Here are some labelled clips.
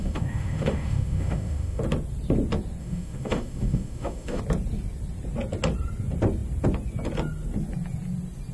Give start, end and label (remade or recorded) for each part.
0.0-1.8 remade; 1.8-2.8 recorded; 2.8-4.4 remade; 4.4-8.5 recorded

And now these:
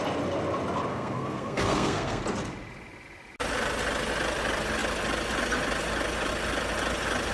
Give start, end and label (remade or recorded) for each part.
0.0-0.9 recorded; 0.9-2.2 remade; 2.2-7.3 recorded

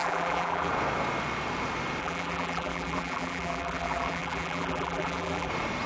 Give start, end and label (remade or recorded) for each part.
0.0-0.7 remade; 0.7-2.0 recorded; 2.0-5.5 remade; 5.5-5.9 recorded